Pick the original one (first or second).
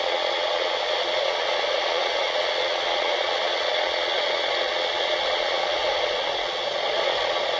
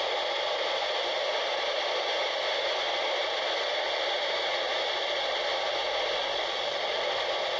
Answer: second